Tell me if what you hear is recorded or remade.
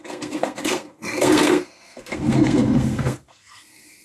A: remade